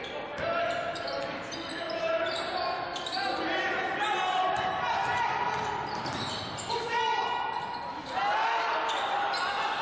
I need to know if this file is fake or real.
real